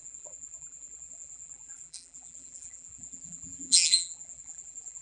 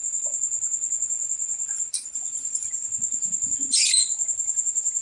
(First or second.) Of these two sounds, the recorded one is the second